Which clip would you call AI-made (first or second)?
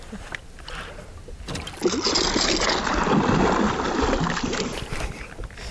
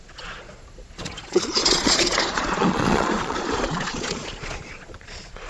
second